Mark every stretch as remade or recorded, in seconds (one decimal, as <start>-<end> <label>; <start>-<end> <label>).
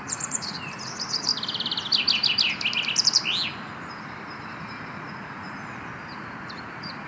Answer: 0.0-1.3 remade; 1.3-5.1 recorded; 5.1-5.6 remade; 5.6-6.1 recorded; 6.1-7.1 remade